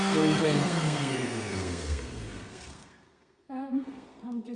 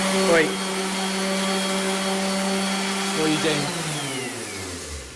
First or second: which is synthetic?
first